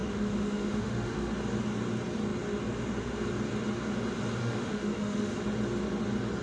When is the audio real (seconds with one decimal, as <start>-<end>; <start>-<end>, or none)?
1.3-4.4; 5.3-6.4